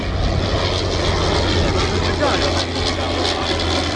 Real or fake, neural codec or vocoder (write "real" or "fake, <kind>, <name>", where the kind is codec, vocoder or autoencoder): real